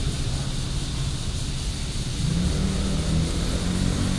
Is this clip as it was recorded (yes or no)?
yes